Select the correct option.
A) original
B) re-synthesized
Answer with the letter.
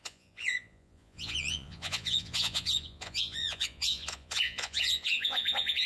B